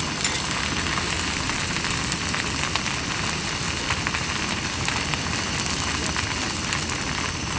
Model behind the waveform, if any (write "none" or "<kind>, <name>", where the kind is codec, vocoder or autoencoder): none